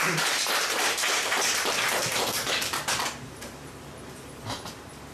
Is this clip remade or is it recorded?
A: remade